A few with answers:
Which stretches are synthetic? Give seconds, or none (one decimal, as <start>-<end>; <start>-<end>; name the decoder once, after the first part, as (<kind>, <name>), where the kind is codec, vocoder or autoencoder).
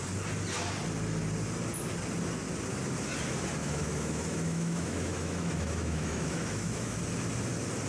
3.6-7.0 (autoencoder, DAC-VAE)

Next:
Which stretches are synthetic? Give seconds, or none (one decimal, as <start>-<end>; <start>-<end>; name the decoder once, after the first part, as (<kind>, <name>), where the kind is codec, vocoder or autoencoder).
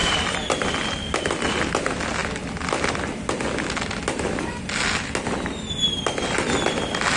none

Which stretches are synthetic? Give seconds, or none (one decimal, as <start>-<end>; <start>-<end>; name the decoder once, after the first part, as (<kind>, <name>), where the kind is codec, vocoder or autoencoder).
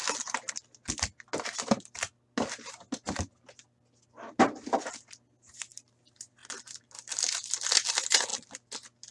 none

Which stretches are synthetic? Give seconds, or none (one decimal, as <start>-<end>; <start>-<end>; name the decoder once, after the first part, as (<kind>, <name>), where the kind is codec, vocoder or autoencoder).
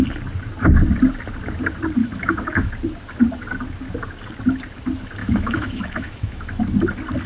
2.0-2.7 (autoencoder, DAC-VAE); 5.2-6.6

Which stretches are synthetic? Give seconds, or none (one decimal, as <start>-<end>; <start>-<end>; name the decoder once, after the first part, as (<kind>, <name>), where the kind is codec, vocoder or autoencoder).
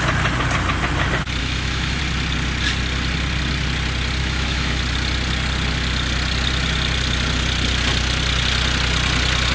1.4-2.0 (autoencoder, DAC-VAE); 4.2-4.8